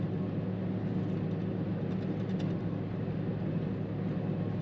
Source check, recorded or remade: recorded